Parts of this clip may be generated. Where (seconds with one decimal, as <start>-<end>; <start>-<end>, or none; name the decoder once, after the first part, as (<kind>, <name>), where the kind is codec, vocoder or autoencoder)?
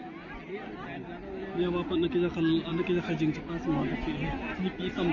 none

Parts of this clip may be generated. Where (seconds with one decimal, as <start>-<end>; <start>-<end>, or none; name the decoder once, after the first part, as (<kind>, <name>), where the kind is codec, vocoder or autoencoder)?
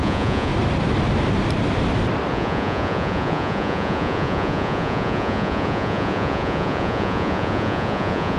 0.0-0.5 (vocoder, Vocos); 2.3-8.4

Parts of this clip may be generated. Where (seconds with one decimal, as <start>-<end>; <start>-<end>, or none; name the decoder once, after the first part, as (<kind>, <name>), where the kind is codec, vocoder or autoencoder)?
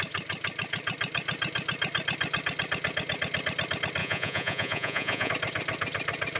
4.0-5.3 (vocoder, Vocos)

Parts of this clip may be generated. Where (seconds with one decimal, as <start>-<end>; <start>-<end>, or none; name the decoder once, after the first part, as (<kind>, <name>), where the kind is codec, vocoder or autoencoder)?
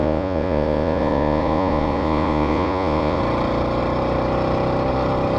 0.0-3.2 (vocoder, Vocos)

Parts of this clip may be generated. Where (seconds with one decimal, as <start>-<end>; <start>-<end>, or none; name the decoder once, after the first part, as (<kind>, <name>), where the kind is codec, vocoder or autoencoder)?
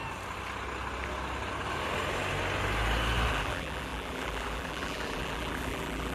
3.3-6.1 (vocoder, BigVGAN v2)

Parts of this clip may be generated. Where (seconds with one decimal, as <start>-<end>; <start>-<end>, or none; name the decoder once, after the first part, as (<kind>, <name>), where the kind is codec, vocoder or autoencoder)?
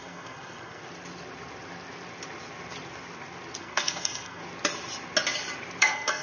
0.0-0.8 (codec, SNAC); 3.6-4.4; 5.8-6.2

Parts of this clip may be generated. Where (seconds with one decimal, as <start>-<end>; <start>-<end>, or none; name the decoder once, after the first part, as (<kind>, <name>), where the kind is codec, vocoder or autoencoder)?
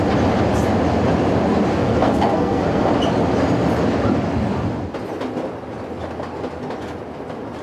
1.8-2.9 (codec, SNAC)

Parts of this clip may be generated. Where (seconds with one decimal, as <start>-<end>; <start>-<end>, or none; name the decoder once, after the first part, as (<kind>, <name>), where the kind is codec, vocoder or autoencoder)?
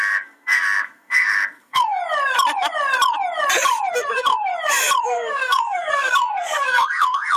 0.0-2.0 (codec, SNAC); 3.9-4.5; 5.0-7.4